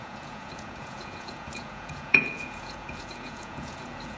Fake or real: fake